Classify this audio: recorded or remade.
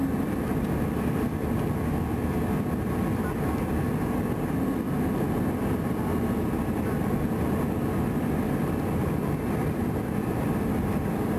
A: recorded